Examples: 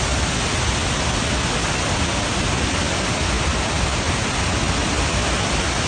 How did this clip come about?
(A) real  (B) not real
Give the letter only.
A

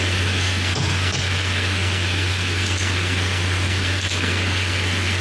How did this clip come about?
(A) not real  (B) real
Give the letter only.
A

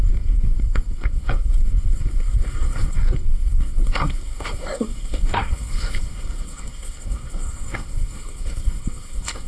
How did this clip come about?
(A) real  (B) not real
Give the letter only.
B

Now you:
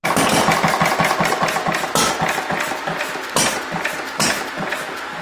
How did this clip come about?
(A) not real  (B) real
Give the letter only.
B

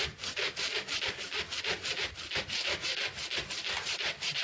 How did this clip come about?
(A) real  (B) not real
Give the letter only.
A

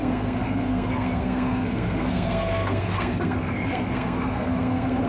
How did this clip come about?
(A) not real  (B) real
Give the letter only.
A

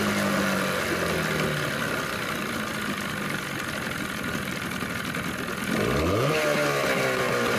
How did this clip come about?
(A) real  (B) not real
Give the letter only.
A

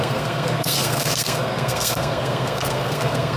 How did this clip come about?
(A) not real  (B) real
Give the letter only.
A